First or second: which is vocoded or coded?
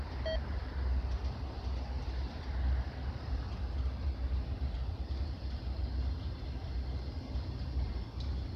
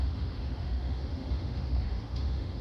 second